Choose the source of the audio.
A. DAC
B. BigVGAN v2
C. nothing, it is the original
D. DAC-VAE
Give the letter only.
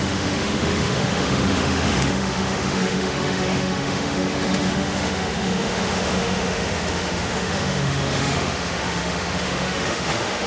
D